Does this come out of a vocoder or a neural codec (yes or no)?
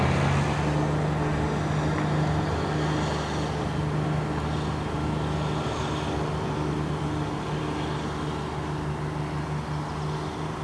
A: no